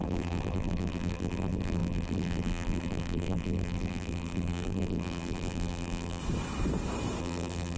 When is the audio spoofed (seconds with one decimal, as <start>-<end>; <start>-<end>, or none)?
0.0-6.2; 7.2-7.8